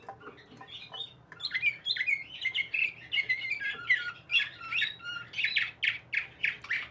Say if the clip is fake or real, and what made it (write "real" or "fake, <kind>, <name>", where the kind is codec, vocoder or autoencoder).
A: real